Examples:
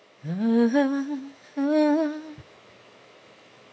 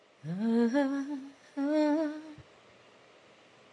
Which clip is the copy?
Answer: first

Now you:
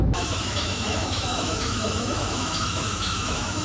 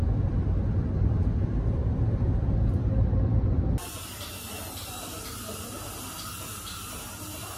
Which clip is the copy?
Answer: first